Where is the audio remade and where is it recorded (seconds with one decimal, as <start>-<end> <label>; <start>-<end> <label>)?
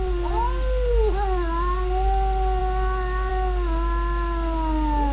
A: 0.0-5.1 recorded